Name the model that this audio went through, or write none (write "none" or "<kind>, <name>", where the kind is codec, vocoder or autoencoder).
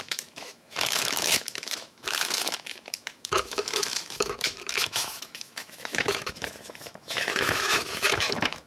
autoencoder, DAC-VAE